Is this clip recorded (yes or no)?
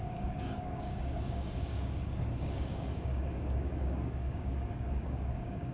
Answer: no